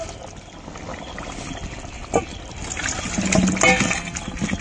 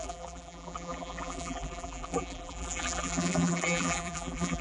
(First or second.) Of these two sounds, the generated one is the second